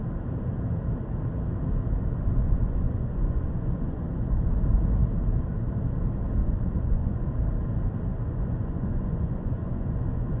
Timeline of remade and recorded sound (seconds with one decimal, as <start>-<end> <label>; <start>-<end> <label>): 0.0-2.4 recorded; 2.4-4.5 remade; 4.5-6.4 recorded; 6.4-7.3 remade; 7.3-8.1 recorded; 8.1-10.4 remade